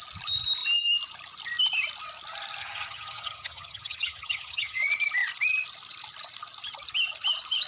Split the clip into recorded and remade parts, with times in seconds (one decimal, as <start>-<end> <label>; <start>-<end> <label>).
0.0-2.6 recorded; 2.6-4.8 remade; 4.8-7.7 recorded